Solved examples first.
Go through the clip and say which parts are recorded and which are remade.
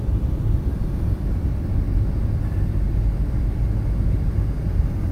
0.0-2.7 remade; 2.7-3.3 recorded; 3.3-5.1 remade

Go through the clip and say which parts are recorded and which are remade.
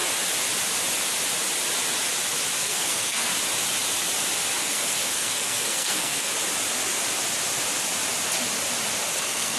0.0-2.6 recorded; 2.6-3.3 remade; 3.3-4.6 recorded; 4.6-6.3 remade; 6.3-9.1 recorded; 9.1-9.6 remade